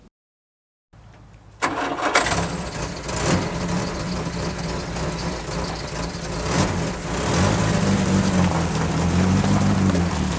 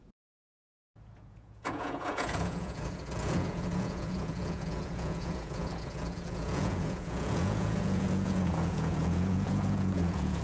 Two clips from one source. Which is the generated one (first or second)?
second